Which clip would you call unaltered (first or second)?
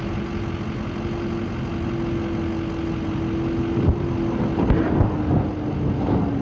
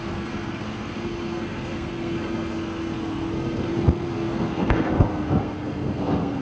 first